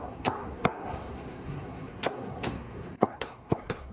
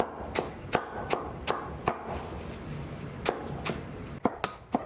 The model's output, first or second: first